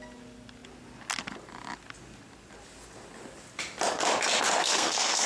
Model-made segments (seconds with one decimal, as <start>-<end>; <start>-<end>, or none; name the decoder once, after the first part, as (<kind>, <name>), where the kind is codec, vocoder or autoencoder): 4.6-5.3 (codec, SNAC)